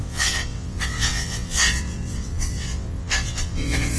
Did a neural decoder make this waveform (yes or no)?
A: yes